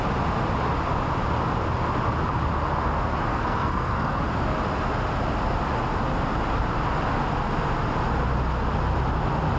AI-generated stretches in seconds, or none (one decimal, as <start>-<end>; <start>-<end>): 3.3-4.2